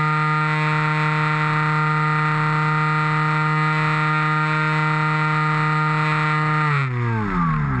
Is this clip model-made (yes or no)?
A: no